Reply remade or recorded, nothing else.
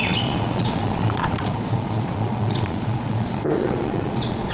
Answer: remade